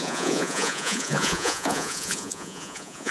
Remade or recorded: remade